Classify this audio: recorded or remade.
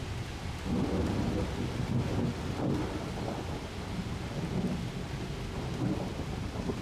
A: recorded